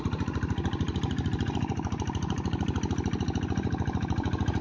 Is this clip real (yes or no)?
no